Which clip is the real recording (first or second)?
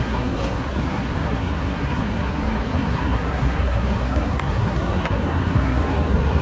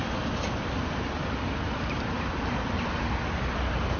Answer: second